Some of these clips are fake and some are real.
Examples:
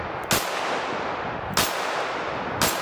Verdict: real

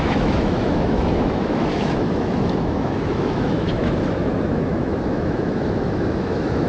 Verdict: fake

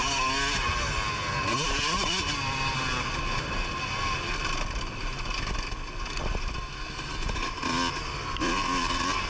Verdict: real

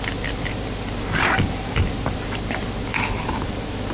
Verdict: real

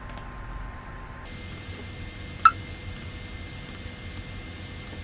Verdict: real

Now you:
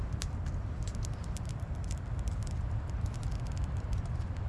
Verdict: real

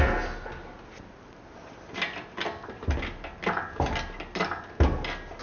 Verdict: real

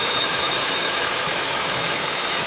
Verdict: fake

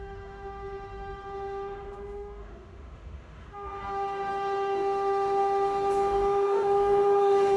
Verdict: fake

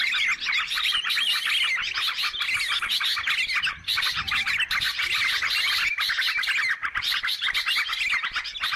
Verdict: real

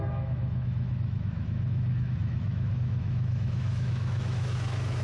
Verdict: fake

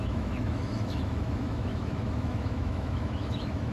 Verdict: fake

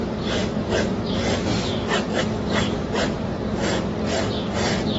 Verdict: real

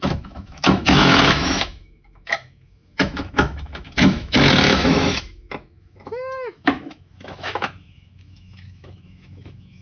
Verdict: fake